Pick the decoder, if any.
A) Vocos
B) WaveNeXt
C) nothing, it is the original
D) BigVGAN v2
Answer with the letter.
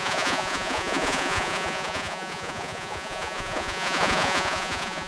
A